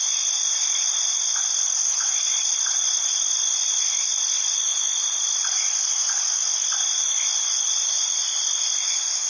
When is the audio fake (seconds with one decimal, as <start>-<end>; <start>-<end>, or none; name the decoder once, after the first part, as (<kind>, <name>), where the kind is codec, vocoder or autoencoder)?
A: none